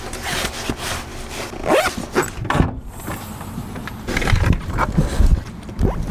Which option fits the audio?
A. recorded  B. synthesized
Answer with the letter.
A